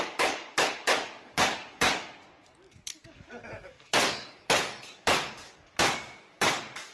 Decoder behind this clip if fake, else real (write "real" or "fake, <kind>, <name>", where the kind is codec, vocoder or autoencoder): fake, codec, DAC